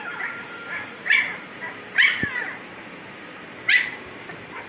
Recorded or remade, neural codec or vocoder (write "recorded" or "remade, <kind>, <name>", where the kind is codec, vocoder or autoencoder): remade, vocoder, BigVGAN v2